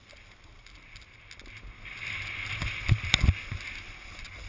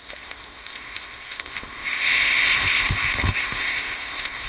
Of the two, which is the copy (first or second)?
second